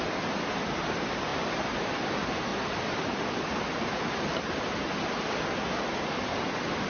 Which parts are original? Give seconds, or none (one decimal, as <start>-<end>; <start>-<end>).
0.0-1.3; 1.9-2.5; 3.3-6.9